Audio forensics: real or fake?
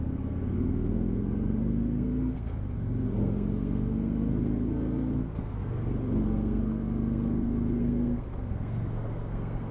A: fake